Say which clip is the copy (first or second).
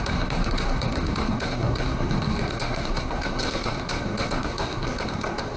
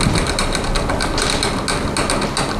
first